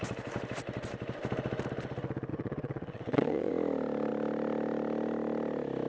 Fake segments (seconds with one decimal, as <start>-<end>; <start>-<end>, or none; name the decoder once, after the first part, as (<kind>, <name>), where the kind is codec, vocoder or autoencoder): 2.3-3.5 (vocoder, WaveNeXt)